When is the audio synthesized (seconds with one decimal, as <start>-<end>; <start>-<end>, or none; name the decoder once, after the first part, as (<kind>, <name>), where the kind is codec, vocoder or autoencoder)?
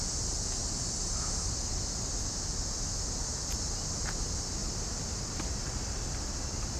none